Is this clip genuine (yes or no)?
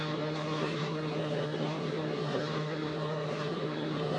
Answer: no